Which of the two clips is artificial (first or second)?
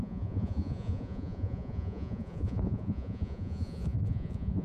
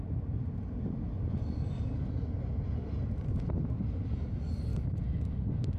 first